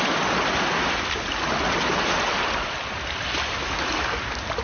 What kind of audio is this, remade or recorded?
recorded